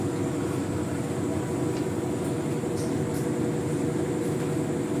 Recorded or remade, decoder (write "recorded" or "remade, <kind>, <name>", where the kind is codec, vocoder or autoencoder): recorded